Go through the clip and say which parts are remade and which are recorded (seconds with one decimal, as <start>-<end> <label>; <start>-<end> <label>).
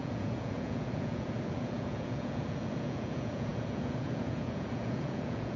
0.0-5.6 remade